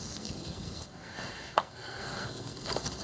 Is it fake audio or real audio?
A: fake